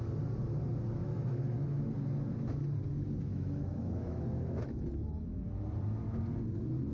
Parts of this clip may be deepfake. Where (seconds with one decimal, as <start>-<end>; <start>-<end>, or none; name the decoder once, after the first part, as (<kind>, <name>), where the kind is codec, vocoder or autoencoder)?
1.0-1.8 (autoencoder, DAC-VAE); 3.3-5.4